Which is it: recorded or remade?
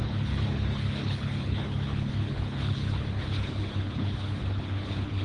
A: remade